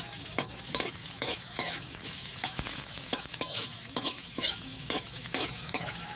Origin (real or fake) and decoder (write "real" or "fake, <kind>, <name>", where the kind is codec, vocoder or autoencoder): fake, autoencoder, DAC-VAE